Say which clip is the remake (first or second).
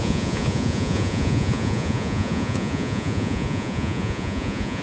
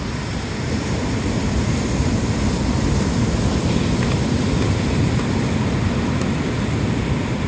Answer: first